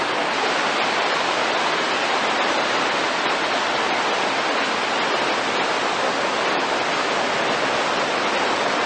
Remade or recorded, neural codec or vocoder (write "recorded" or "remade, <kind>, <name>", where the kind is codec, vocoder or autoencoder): recorded